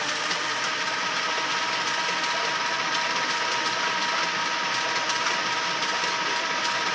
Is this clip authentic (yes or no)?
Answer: yes